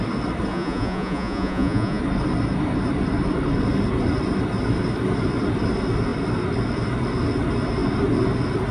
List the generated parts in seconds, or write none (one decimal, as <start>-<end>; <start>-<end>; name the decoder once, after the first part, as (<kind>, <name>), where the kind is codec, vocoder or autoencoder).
0.5-2.0 (vocoder, Vocos)